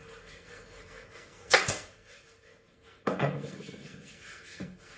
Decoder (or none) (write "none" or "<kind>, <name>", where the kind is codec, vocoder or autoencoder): codec, SNAC